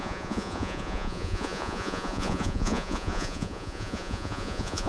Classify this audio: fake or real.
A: fake